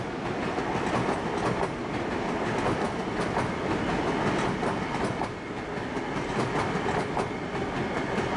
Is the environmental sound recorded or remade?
recorded